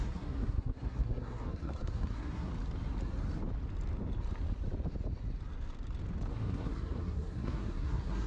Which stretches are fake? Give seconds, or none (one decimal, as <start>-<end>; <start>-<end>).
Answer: 0.0-2.5; 6.3-8.3